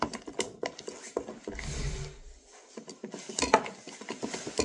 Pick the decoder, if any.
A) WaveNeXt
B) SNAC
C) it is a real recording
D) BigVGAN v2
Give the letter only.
C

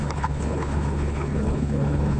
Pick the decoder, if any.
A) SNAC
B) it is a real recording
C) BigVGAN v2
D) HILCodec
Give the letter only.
D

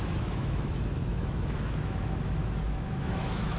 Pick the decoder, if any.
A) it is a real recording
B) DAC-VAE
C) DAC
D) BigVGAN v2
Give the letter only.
B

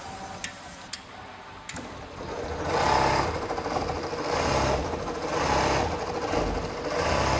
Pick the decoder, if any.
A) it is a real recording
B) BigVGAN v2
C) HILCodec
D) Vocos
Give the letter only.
A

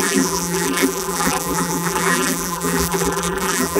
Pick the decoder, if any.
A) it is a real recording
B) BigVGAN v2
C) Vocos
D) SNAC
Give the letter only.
B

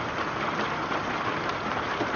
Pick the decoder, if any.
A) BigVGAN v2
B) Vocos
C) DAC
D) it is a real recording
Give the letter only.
D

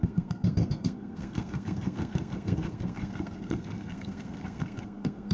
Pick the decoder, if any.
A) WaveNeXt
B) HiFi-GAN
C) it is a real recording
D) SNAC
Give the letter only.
D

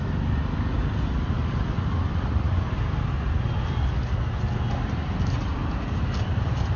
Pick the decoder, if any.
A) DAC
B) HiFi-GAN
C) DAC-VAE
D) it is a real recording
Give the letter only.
D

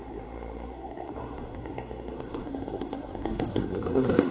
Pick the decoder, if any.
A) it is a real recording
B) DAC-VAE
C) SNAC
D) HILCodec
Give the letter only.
C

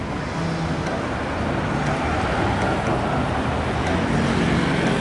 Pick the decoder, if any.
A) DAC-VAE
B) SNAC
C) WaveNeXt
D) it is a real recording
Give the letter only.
D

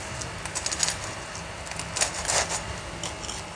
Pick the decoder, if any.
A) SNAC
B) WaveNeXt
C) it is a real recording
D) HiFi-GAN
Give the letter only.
C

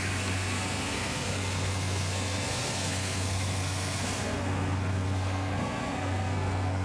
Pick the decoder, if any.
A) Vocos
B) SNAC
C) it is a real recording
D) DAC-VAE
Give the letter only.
B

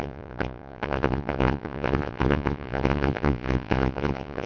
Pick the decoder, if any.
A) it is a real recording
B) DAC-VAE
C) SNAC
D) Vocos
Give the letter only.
D